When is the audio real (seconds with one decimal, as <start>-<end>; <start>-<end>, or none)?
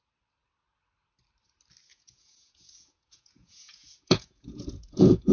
0.0-1.9